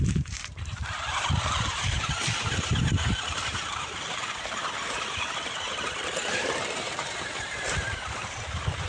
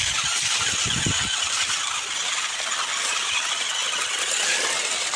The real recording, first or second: second